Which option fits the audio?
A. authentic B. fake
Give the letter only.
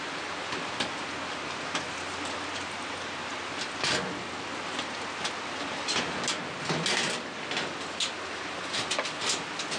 A